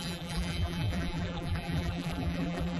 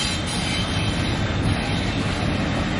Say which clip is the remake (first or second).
first